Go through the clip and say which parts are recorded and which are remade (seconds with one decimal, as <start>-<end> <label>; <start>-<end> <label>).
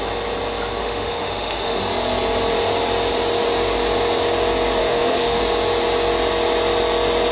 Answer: 0.0-0.8 recorded; 0.8-1.8 remade; 1.8-4.8 recorded; 4.8-5.4 remade; 5.4-7.3 recorded